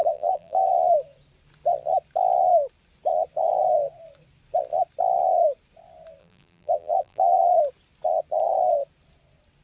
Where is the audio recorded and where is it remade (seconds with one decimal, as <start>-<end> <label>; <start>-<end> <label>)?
0.0-0.7 remade; 0.7-6.2 recorded; 6.2-7.5 remade; 7.5-9.6 recorded